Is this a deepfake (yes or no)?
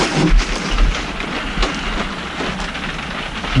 no